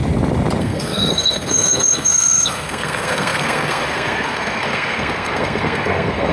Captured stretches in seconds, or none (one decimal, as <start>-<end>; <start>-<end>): 0.0-0.6